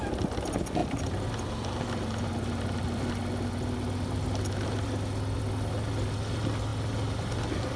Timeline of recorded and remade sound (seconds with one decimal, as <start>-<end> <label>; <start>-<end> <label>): 0.0-7.8 recorded